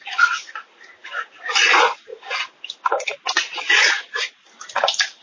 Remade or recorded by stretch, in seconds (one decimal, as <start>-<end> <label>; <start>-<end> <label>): 0.0-5.2 recorded